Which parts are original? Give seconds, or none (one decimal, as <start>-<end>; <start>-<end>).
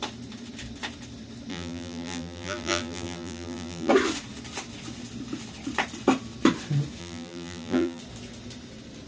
0.0-1.5; 3.9-7.0; 8.0-9.1